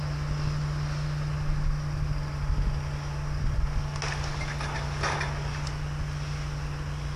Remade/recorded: recorded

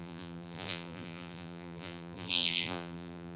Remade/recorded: remade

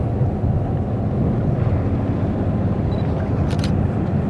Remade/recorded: recorded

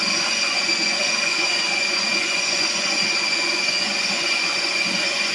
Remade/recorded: remade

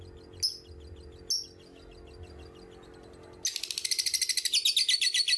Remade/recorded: recorded